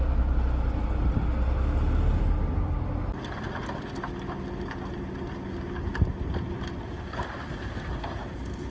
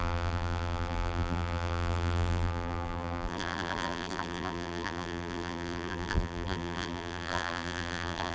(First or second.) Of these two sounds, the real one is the first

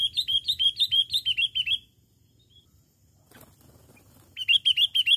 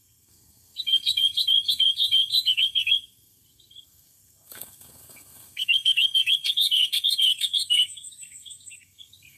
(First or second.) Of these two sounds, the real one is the first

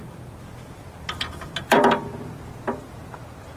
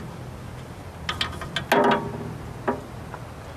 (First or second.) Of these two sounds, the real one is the second